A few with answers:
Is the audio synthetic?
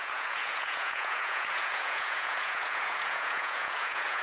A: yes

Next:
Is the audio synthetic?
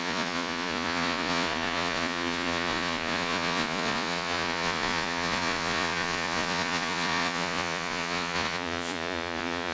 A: yes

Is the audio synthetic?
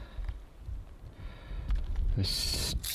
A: no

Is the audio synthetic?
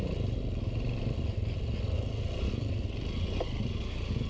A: no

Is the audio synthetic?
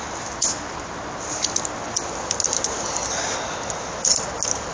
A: no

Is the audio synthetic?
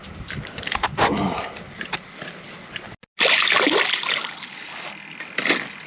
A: no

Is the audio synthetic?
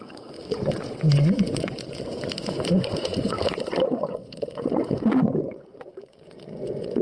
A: yes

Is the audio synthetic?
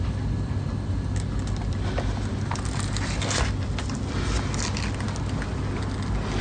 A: no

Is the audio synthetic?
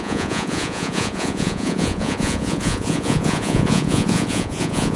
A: yes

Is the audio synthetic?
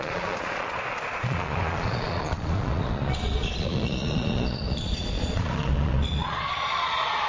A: yes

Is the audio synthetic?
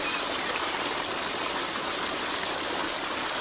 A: no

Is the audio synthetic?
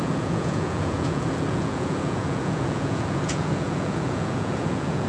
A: yes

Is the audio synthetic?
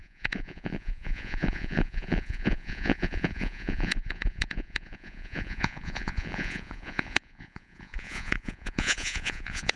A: yes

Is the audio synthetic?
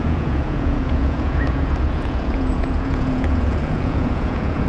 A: yes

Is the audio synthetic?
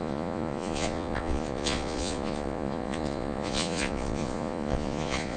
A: yes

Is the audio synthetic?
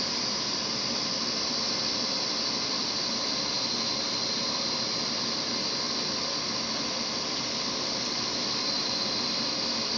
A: no